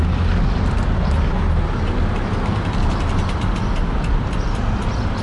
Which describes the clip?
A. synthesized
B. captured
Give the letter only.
B